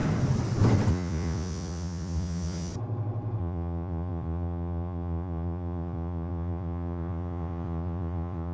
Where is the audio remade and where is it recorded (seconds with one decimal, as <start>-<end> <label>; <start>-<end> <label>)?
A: 0.0-0.9 recorded; 0.9-2.7 remade; 2.7-3.4 recorded; 3.4-8.5 remade